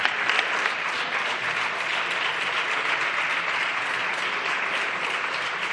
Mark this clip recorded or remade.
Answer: recorded